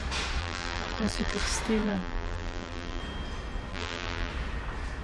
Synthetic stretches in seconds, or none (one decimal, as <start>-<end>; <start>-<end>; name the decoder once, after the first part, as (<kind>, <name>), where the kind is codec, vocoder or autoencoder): 0.4-1.4 (vocoder, BigVGAN v2); 1.8-3.0; 3.7-4.3